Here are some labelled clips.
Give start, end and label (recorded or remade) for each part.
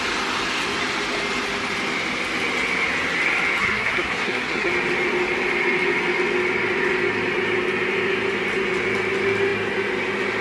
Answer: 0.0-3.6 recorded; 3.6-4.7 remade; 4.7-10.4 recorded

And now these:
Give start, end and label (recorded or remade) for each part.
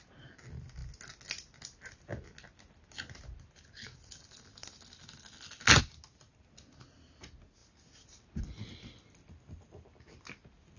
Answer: 0.0-10.8 recorded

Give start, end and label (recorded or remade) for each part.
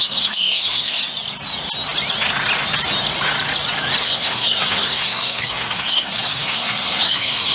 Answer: 0.0-1.0 remade; 1.0-4.0 recorded; 4.0-7.5 remade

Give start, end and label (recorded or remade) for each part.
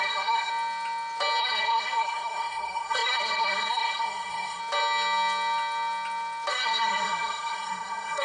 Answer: 0.0-0.5 remade; 0.5-1.4 recorded; 1.4-4.6 remade; 4.6-6.5 recorded; 6.5-8.2 remade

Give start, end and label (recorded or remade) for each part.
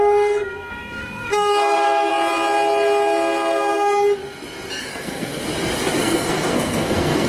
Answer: 0.0-2.1 remade; 2.1-4.8 recorded; 4.8-5.4 remade; 5.4-6.0 recorded; 6.0-7.3 remade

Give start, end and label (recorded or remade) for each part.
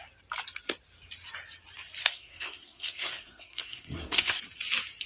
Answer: 0.0-2.0 recorded; 2.0-4.4 remade; 4.4-5.1 recorded